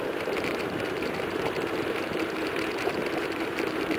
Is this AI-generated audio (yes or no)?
yes